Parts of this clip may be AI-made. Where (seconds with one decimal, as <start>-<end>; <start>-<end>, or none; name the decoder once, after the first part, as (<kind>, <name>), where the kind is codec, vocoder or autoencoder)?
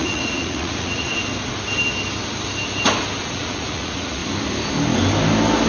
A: 0.0-1.1 (vocoder, Vocos); 3.2-4.2